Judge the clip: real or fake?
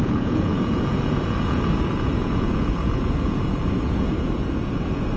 fake